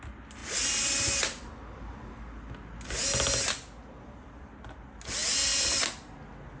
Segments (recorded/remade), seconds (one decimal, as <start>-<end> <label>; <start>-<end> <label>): 0.0-6.6 recorded